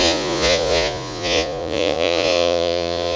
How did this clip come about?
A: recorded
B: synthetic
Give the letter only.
B